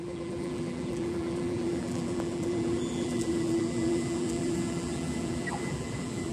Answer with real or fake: fake